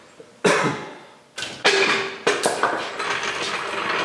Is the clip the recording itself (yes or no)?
yes